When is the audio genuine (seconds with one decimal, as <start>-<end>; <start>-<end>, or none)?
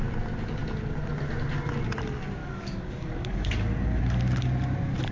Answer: 0.0-2.4; 4.0-5.1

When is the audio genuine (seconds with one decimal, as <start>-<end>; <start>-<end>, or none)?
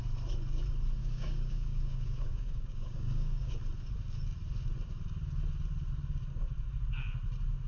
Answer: 0.0-1.0; 3.6-7.7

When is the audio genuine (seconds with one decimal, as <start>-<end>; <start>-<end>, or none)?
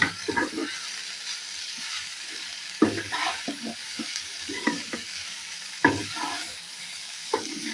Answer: 0.6-1.6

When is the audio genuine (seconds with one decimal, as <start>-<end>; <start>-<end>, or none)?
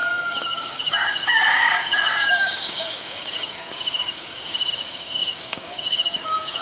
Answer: none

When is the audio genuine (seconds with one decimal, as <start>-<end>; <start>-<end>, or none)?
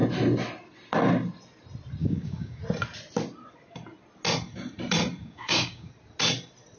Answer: 0.0-2.0; 2.6-5.2; 5.9-6.8